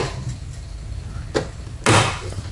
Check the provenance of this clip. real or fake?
real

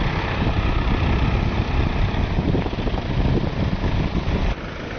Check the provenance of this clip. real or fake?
real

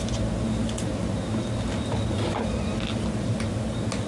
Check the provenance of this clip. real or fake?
real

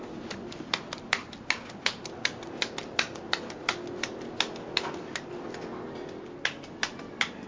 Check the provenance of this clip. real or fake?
real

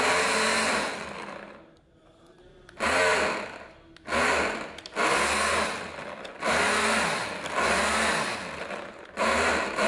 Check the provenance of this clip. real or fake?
real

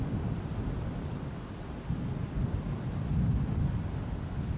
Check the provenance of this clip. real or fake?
real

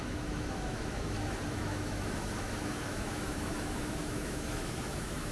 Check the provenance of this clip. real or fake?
fake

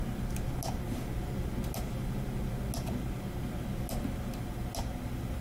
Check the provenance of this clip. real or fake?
real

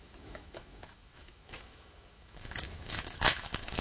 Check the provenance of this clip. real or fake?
fake